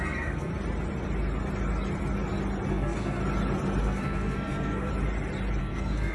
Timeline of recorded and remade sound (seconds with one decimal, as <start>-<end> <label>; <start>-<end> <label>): 0.0-0.5 remade; 0.5-2.7 recorded; 2.7-3.2 remade; 3.2-3.8 recorded; 3.8-4.9 remade; 4.9-5.6 recorded; 5.6-6.1 remade